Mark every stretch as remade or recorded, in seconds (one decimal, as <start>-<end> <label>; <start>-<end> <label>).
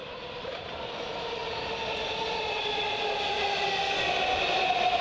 0.0-0.5 remade; 0.5-1.4 recorded; 1.4-4.0 remade; 4.0-5.0 recorded